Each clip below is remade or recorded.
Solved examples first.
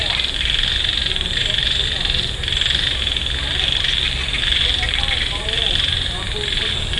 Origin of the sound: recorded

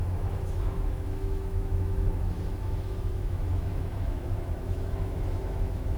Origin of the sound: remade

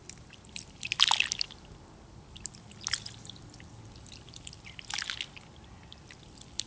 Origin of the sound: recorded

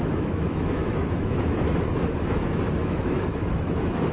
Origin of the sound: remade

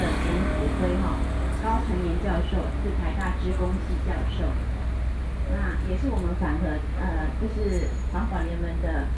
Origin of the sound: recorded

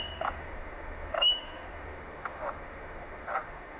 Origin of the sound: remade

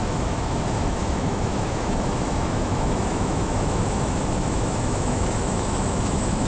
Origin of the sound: remade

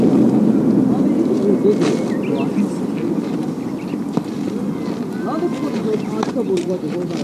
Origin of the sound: recorded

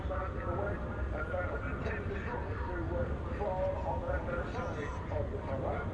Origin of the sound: recorded